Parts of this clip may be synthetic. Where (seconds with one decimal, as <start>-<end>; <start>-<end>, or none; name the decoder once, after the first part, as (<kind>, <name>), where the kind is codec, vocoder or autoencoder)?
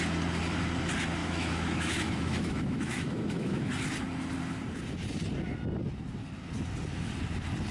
1.2-3.7 (autoencoder, DAC-VAE)